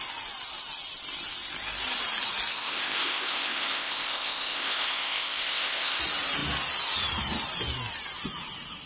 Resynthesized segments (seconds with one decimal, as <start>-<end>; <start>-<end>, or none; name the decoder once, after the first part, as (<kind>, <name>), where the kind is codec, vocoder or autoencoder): 2.5-6.0 (codec, ZipCodec)